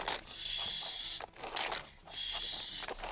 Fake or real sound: real